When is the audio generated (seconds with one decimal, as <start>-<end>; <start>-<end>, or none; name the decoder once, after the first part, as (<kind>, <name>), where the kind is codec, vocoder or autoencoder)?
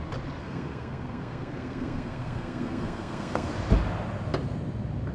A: 0.4-3.5 (codec, SNAC)